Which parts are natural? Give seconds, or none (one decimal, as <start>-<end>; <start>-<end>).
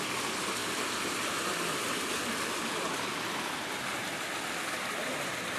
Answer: 0.0-5.6